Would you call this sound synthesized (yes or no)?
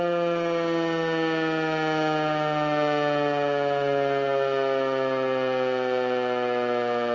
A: no